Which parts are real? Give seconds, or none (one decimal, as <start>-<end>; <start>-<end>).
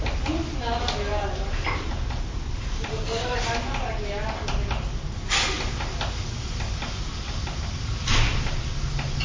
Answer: 0.0-2.9; 3.4-9.2